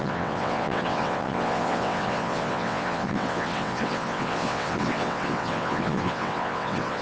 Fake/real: fake